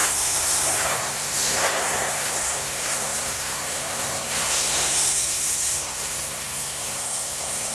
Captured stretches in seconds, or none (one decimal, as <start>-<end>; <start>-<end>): none